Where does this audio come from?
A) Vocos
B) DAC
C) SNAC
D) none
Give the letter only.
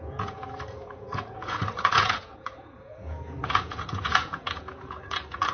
A